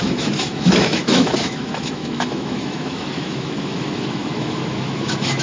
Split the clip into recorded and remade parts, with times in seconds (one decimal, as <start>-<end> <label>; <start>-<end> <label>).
0.0-5.4 remade